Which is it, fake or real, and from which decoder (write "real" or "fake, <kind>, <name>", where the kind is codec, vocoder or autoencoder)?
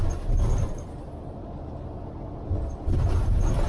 real